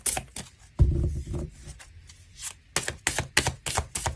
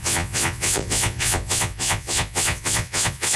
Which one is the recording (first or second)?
first